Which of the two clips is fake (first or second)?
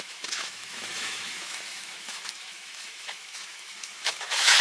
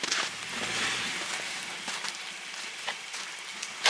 first